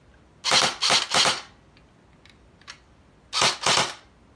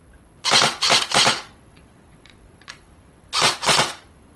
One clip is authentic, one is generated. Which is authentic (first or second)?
first